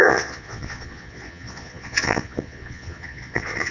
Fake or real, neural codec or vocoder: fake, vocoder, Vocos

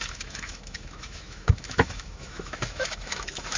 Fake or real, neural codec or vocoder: fake, autoencoder, DAC-VAE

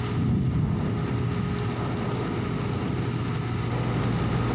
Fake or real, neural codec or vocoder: real